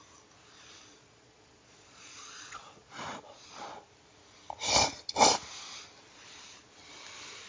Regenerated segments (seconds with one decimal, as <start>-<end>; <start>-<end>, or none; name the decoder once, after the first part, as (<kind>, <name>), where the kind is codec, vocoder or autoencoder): 0.9-3.0 (vocoder, Vocos)